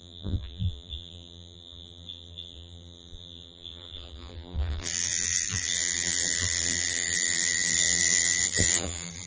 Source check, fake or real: fake